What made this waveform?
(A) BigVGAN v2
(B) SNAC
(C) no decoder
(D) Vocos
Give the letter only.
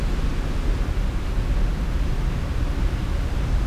C